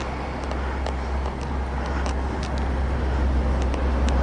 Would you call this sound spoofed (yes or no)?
no